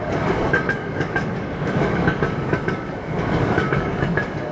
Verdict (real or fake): fake